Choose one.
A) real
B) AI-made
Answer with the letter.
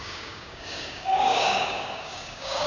B